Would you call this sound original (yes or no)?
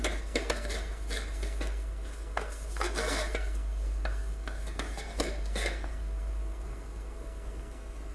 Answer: no